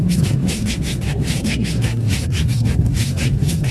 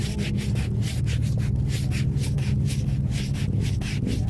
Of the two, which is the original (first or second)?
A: second